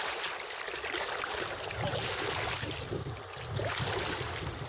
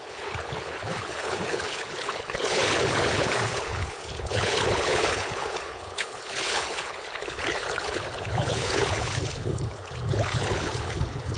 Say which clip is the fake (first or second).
second